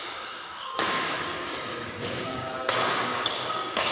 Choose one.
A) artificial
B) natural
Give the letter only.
A